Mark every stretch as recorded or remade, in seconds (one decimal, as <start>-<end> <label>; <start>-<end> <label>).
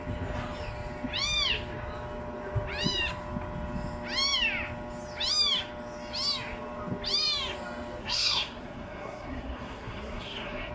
0.0-8.0 recorded; 8.0-10.7 remade